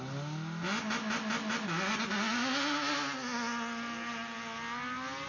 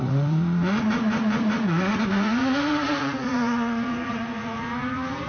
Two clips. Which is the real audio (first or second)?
first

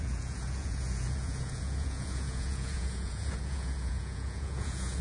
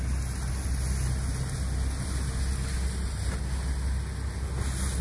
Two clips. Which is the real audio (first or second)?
second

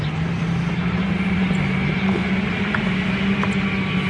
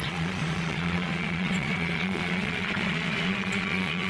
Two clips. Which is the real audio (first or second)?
first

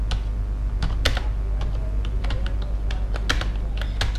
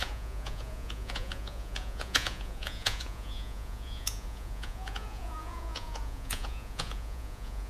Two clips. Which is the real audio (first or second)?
first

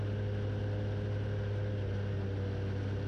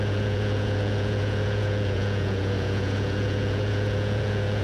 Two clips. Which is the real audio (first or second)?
first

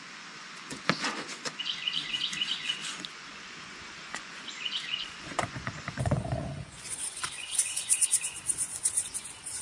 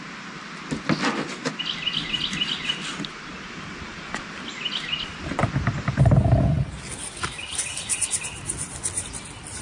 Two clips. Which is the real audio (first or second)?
second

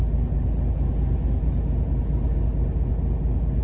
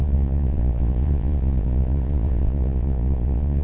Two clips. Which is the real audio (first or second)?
first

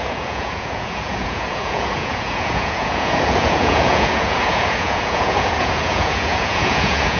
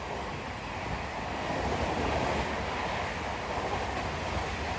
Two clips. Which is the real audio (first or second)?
second